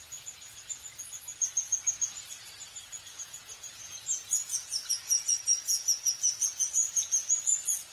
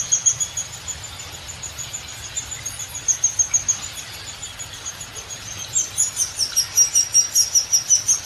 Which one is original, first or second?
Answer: second